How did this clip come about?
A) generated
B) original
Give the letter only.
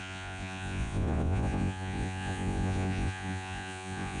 A